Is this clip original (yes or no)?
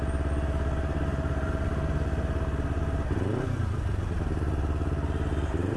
yes